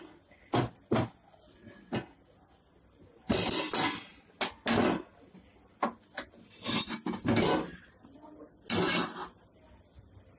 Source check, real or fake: real